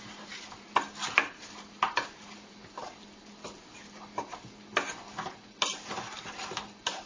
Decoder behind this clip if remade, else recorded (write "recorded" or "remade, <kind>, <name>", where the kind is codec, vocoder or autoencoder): recorded